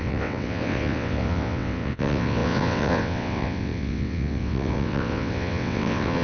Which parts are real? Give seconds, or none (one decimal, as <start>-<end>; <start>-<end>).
none